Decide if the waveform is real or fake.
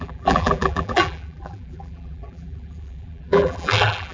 fake